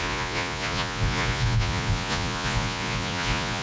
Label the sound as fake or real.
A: fake